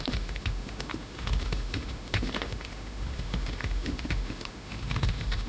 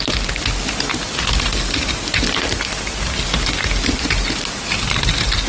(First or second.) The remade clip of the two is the first